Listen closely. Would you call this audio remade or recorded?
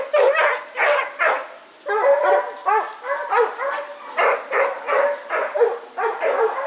recorded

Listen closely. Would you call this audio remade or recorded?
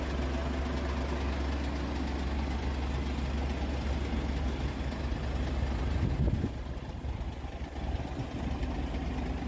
recorded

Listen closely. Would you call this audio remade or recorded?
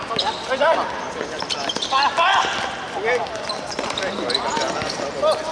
recorded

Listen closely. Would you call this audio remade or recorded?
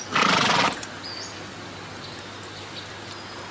recorded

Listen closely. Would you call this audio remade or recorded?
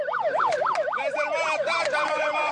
remade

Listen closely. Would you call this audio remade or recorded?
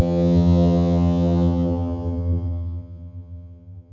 remade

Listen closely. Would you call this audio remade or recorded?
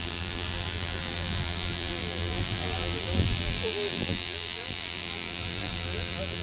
remade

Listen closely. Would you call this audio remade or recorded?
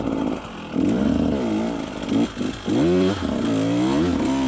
recorded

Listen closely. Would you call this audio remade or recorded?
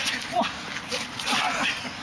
recorded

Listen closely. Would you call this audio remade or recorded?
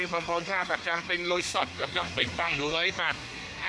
remade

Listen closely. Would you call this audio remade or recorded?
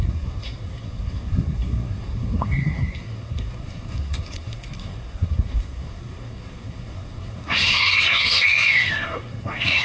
remade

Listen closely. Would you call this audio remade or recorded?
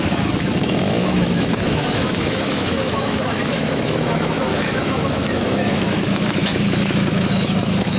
remade